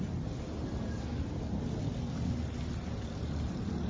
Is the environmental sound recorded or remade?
recorded